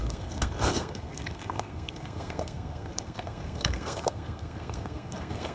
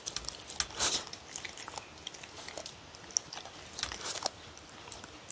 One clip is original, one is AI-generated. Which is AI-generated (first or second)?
first